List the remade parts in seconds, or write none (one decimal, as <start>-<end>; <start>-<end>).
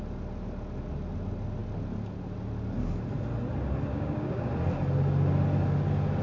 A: 3.9-4.5